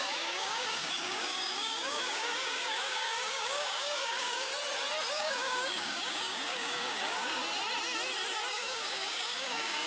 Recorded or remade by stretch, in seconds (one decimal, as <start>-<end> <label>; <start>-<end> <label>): 0.0-4.5 remade; 4.5-5.1 recorded; 5.1-7.4 remade; 7.4-8.5 recorded; 8.5-9.9 remade